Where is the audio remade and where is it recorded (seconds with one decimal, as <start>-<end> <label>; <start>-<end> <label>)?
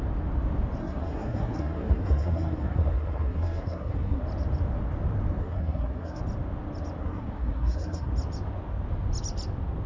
0.0-0.8 recorded; 0.8-4.2 remade; 4.2-5.4 recorded; 5.4-6.2 remade; 6.2-7.0 recorded; 7.0-8.1 remade; 8.1-9.9 recorded